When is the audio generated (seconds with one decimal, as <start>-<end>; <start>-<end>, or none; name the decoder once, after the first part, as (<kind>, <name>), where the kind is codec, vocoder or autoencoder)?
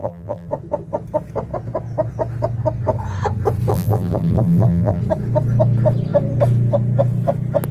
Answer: 0.0-0.5 (vocoder, BigVGAN v2); 3.7-5.0